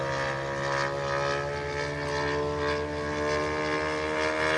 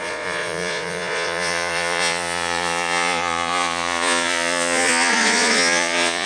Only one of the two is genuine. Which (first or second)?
first